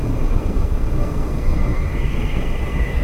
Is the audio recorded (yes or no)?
no